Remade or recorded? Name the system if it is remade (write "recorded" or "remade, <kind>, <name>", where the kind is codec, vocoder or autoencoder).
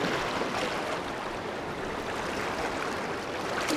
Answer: recorded